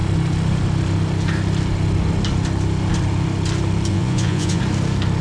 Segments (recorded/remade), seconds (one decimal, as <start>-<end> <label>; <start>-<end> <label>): 0.0-3.9 recorded; 3.9-4.6 remade; 4.6-5.2 recorded